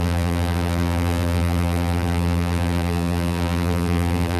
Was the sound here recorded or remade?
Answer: remade